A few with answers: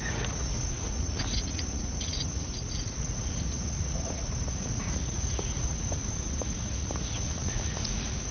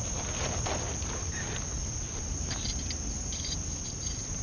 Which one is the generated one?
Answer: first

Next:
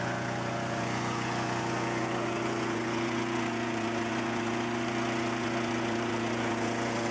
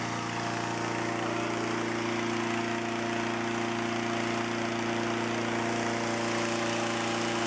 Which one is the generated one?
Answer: first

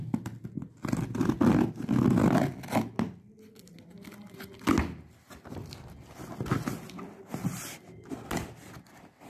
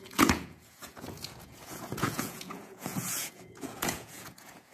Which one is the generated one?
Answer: second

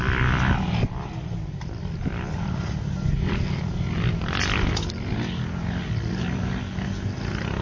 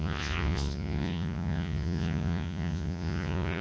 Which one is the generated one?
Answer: second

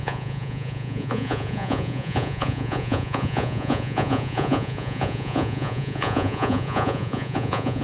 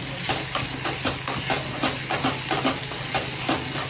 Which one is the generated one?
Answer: first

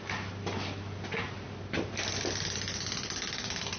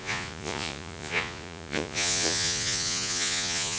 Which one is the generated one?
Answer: second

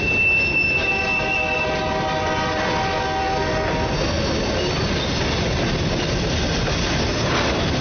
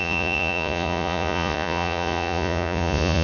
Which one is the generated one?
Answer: second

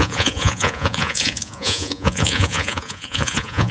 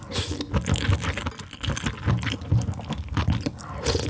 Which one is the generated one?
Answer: first